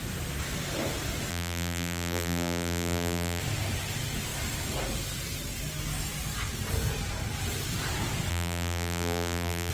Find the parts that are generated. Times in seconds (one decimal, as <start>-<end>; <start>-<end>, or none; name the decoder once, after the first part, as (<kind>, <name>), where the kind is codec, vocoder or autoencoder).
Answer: 1.3-3.4 (vocoder, BigVGAN v2); 8.3-9.7